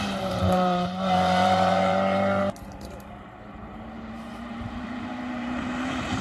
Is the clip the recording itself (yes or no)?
no